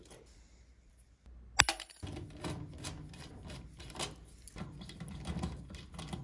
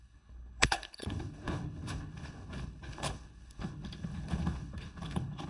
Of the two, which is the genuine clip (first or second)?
first